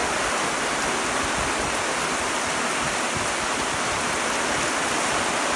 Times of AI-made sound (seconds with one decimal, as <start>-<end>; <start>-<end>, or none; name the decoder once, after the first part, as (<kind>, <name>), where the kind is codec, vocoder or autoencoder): none